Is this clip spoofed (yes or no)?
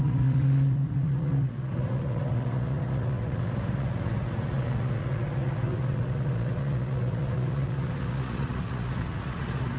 yes